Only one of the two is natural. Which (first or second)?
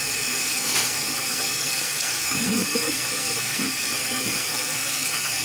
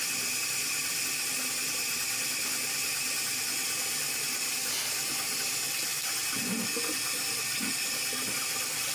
second